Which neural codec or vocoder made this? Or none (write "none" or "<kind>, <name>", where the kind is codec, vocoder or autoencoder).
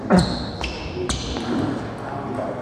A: none